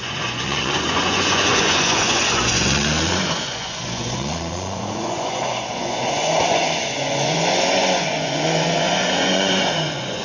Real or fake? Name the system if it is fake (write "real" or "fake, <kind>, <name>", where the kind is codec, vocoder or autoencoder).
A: fake, vocoder, Vocos